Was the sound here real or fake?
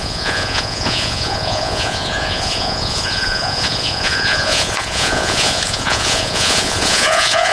fake